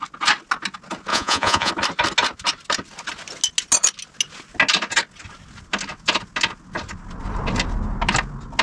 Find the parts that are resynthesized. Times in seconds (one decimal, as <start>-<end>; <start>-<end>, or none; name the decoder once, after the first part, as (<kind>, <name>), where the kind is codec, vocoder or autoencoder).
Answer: 1.1-1.7 (vocoder, Vocos)